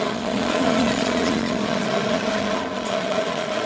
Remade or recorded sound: remade